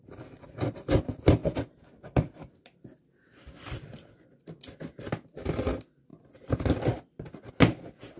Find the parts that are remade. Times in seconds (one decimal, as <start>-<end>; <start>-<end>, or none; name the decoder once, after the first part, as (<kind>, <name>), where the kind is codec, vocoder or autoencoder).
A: none